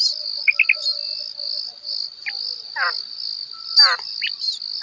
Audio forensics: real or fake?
real